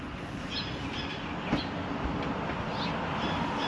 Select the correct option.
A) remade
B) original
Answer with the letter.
B